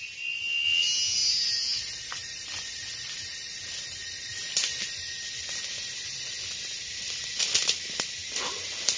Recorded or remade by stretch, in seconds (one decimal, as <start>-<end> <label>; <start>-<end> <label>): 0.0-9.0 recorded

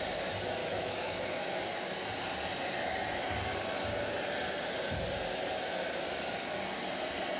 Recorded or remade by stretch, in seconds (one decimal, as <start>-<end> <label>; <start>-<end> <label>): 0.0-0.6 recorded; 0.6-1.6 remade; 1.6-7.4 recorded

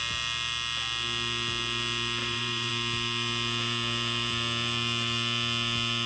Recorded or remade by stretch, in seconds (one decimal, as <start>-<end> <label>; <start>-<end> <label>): 0.0-2.2 recorded; 2.2-2.7 remade; 2.7-6.1 recorded

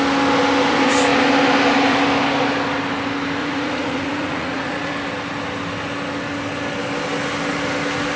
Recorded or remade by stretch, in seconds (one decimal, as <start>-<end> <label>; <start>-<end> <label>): 0.0-3.4 recorded; 3.4-4.9 remade; 4.9-8.2 recorded

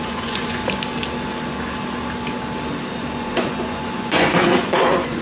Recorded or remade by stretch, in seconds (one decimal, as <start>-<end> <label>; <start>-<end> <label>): 0.0-0.6 remade; 0.6-3.2 recorded; 3.2-5.2 remade

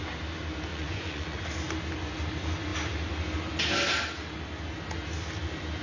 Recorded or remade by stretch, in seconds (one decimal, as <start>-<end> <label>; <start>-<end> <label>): 0.0-0.7 recorded; 0.7-1.4 remade; 1.4-5.8 recorded